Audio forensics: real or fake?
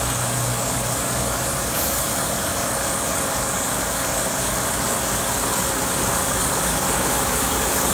fake